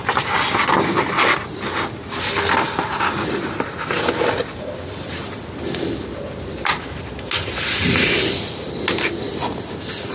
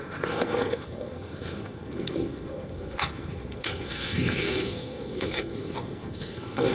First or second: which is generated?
second